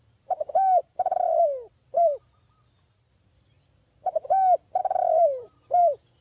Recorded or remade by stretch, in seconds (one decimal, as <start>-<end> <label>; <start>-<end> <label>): 0.0-0.8 recorded; 0.8-1.4 remade; 1.4-4.8 recorded; 4.8-5.6 remade; 5.6-6.2 recorded